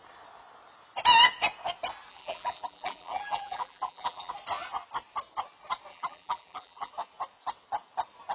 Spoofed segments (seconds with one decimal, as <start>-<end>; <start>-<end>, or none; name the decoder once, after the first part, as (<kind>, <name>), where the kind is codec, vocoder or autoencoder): 2.1-4.3 (vocoder, BigVGAN v2); 5.9-6.9